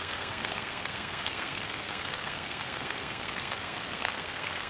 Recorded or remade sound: remade